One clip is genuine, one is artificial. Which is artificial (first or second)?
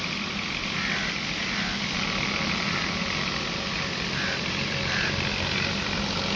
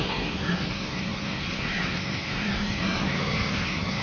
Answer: second